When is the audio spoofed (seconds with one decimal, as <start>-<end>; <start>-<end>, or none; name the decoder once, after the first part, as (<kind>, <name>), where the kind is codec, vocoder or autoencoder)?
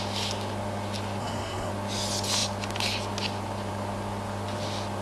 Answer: 1.2-1.7 (codec, SNAC)